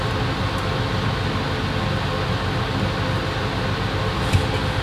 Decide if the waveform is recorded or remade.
recorded